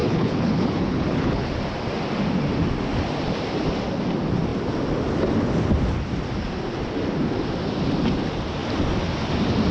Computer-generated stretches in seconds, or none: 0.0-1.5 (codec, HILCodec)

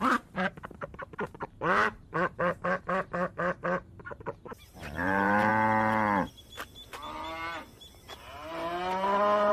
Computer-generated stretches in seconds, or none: 0.0-5.5 (vocoder, BigVGAN v2)

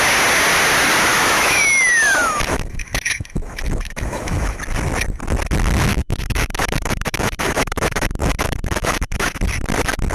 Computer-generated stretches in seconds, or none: 1.1-4.6 (autoencoder, DAC-VAE); 5.9-9.4

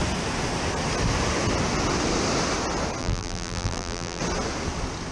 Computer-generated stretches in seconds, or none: 3.0-4.2 (vocoder, BigVGAN v2)

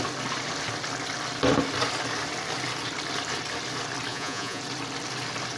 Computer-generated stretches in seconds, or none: 4.1-4.6 (vocoder, Vocos)

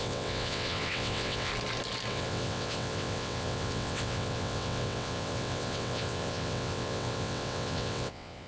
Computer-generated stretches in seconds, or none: 0.0-1.5 (vocoder, WaveNeXt); 2.1-8.5

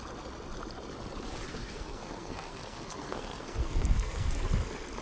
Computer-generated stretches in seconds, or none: 1.5-4.4 (codec, SNAC)